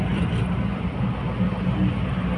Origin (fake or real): real